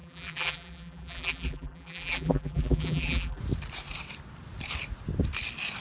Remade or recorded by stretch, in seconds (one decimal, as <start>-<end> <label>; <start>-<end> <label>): 0.0-3.4 remade; 3.4-5.8 recorded